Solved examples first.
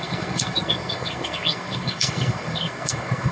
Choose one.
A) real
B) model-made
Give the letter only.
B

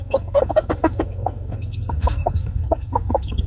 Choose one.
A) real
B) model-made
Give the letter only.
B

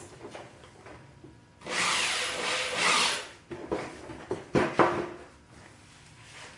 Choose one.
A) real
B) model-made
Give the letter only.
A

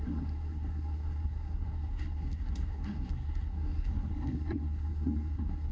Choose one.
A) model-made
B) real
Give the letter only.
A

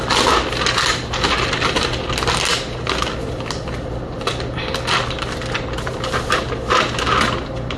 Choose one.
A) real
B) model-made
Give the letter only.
A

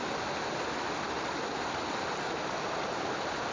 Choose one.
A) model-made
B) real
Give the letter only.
B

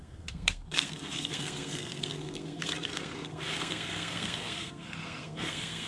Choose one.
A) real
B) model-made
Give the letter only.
B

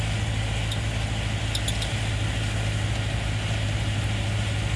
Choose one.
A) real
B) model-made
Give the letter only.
A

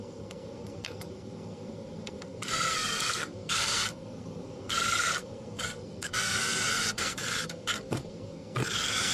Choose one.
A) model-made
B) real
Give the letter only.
A